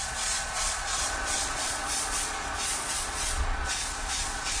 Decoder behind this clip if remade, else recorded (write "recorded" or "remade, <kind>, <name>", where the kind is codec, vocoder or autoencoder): remade, vocoder, Vocos